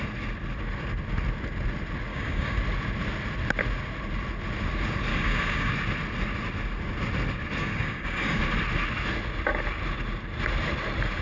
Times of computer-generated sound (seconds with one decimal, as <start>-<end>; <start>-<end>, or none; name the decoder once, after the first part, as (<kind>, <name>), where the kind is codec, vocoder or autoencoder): 2.1-2.6 (codec, DAC); 5.1-5.7; 7.6-8.4